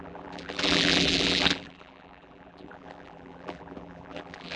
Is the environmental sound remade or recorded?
remade